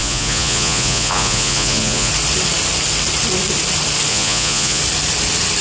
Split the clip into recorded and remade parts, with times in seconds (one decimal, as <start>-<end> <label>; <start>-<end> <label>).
0.0-2.1 remade; 2.1-4.1 recorded; 4.1-4.8 remade; 4.8-5.6 recorded